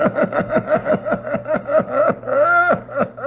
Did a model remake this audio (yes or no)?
yes